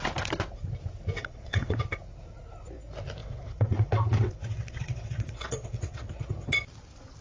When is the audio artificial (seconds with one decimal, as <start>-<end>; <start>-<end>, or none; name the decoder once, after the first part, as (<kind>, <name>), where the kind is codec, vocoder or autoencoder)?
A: 1.2-1.8 (vocoder, WaveNeXt); 3.2-6.1